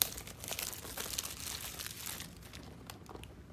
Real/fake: real